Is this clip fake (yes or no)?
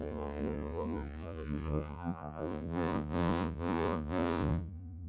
yes